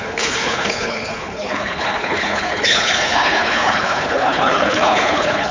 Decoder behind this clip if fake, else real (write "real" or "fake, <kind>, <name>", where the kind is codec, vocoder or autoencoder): fake, codec, HILCodec